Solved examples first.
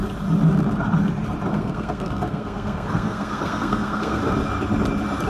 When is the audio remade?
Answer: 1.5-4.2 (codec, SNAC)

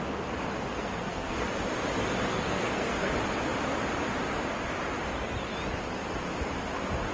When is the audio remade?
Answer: 0.7-1.5 (codec, SNAC); 2.3-3.1

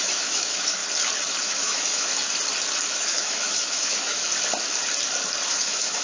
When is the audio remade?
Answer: 0.0-0.8 (autoencoder, DAC-VAE); 1.4-2.1; 2.9-4.3; 5.5-6.0

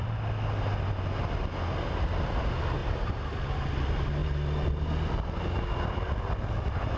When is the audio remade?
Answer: none

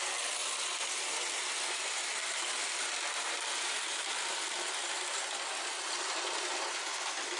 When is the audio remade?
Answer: 0.4-4.8 (vocoder, BigVGAN v2)